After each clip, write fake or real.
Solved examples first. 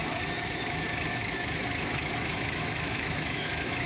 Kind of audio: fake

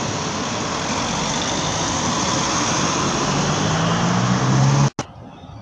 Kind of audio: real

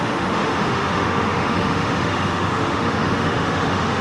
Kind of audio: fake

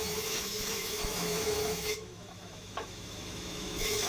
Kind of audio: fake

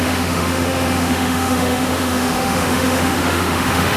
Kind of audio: fake